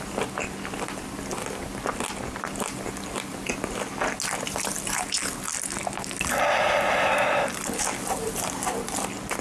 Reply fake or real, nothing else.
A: real